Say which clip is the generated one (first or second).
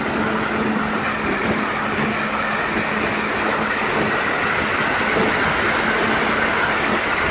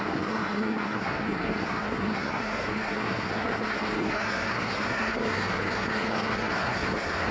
second